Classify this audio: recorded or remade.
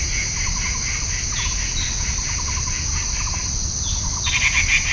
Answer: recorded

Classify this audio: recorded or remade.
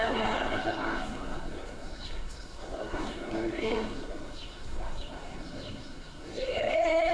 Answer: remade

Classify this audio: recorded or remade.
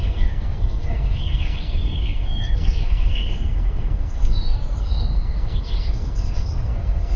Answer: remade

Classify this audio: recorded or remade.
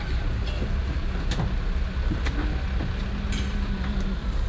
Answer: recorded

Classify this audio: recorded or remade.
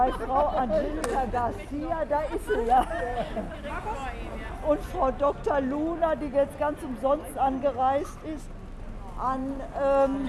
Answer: recorded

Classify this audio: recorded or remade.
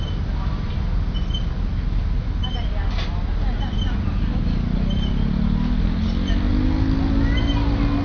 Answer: recorded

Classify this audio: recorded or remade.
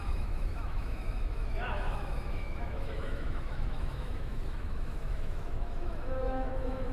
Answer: remade